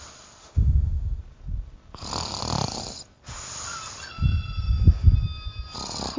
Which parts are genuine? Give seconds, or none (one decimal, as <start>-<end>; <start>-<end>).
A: 0.0-0.4; 1.2-6.2